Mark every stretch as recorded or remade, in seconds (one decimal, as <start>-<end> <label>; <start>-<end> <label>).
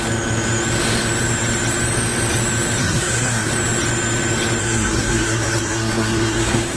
0.0-2.8 recorded; 2.8-3.5 remade; 3.5-4.6 recorded; 4.6-6.8 remade